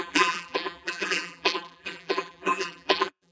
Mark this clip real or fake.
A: fake